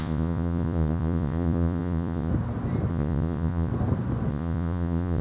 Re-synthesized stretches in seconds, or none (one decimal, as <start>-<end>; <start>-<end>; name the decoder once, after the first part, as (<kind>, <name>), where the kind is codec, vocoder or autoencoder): 0.0-2.3 (vocoder, Vocos); 2.9-3.7; 4.3-5.2

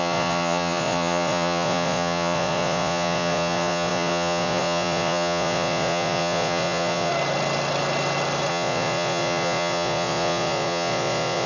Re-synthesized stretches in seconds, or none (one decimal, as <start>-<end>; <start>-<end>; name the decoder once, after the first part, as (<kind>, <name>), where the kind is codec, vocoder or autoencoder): 0.0-7.1 (vocoder, Vocos); 8.5-11.5

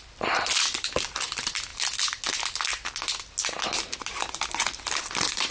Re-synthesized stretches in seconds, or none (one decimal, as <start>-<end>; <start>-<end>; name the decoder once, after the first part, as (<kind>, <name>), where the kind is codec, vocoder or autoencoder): 0.0-1.7 (vocoder, BigVGAN v2); 5.0-5.5

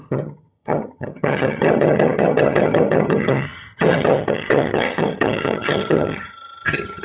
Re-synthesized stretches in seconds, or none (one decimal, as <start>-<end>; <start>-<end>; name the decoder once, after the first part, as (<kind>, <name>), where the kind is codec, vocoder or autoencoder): 0.0-7.0 (vocoder, HiFi-GAN)

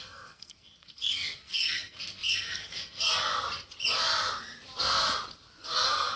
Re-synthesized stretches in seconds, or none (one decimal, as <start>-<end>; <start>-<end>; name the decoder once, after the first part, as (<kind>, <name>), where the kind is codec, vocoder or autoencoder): 0.0-3.3 (codec, SNAC); 5.6-6.2

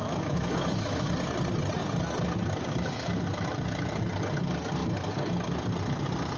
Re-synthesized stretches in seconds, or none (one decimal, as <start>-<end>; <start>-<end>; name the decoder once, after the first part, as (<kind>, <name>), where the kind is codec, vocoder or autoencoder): 0.0-1.1 (autoencoder, DAC-VAE)

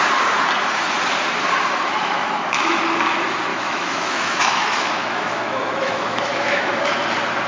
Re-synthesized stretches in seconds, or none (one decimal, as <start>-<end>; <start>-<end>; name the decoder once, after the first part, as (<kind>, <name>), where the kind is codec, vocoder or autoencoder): 2.0-2.8 (autoencoder, DAC-VAE); 3.5-6.9